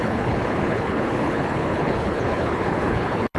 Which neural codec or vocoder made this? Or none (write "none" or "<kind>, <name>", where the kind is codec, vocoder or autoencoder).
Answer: codec, HILCodec